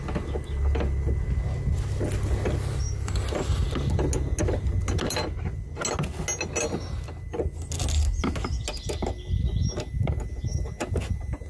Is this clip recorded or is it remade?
recorded